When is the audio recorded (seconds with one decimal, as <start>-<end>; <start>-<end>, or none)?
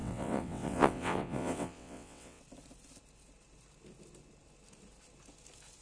2.4-5.8